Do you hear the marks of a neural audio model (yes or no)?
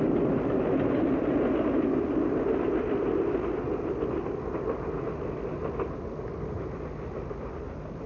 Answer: no